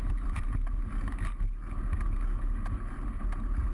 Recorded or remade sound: recorded